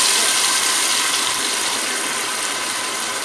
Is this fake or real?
real